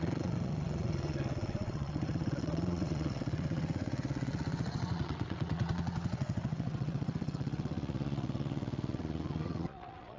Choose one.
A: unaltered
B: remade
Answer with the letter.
B